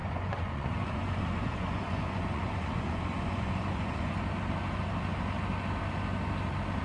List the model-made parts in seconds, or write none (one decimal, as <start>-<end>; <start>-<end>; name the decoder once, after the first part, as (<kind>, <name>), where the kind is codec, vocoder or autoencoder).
0.0-4.1 (vocoder, Vocos)